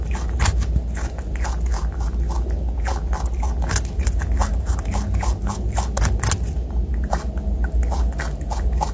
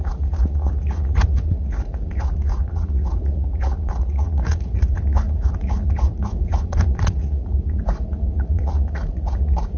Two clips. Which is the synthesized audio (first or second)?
second